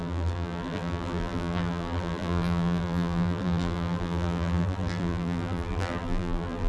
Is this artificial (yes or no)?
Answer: yes